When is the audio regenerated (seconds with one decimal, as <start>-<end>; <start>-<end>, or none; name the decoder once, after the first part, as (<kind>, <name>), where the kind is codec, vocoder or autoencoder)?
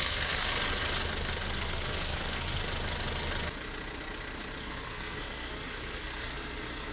0.0-0.5 (codec, SNAC); 1.4-2.6; 4.6-6.9